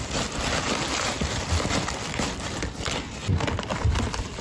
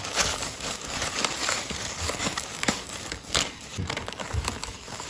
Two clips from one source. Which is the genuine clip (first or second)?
first